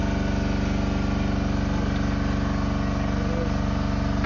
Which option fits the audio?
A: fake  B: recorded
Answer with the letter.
B